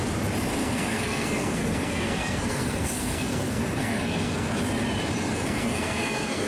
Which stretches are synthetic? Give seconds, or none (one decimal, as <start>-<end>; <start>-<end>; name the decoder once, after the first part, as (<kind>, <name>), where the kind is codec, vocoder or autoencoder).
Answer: 0.6-4.5 (codec, SNAC); 5.3-6.5